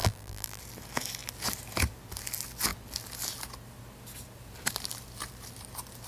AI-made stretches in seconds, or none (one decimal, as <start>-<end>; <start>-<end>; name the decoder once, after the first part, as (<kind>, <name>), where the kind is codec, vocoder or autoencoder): 0.0-0.6 (vocoder, BigVGAN v2)